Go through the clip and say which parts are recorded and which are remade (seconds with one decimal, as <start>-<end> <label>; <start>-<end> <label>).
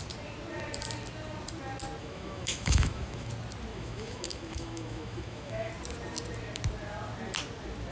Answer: 0.0-2.0 recorded; 2.0-3.3 remade; 3.3-3.7 recorded; 3.7-5.7 remade; 5.7-7.9 recorded